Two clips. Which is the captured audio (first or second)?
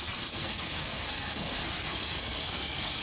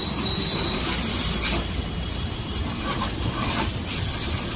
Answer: second